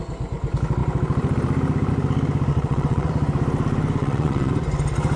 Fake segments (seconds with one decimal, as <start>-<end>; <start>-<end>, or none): 2.5-3.1; 4.0-4.5